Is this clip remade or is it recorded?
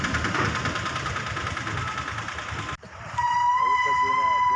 recorded